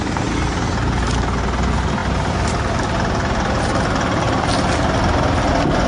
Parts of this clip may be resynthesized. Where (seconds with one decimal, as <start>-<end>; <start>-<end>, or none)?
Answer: none